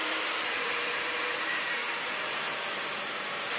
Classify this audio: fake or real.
fake